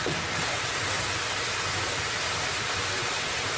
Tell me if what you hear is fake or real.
real